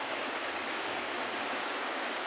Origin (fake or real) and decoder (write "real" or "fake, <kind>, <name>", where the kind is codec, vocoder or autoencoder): fake, codec, DAC